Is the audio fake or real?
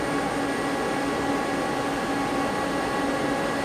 real